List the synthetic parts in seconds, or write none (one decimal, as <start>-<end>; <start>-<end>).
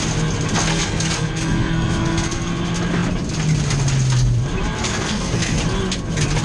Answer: 0.7-2.5; 4.8-5.6